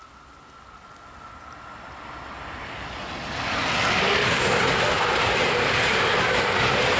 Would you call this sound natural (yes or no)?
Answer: yes